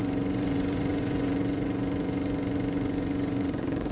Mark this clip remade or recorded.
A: remade